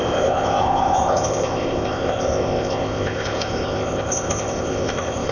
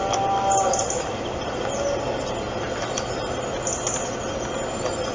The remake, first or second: first